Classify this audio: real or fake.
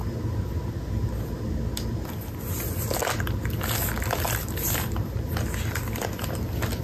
real